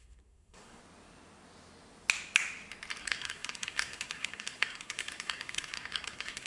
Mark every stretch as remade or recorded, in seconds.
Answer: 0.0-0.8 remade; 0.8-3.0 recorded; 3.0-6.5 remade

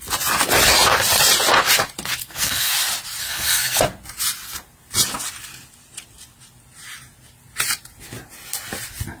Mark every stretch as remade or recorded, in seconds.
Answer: 0.0-2.2 recorded; 2.2-2.7 remade; 2.7-3.2 recorded; 3.2-3.8 remade; 3.8-9.2 recorded

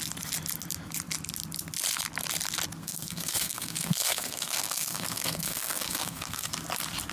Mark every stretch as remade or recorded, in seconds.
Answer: 0.0-2.8 recorded; 2.8-6.5 remade; 6.5-7.1 recorded

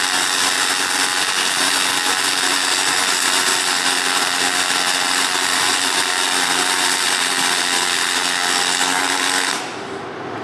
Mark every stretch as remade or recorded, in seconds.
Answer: 0.0-10.4 recorded

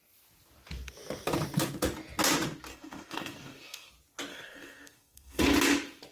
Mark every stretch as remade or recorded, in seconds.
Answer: 0.0-2.7 recorded; 2.7-3.9 remade; 3.9-4.3 recorded; 4.3-5.4 remade; 5.4-6.1 recorded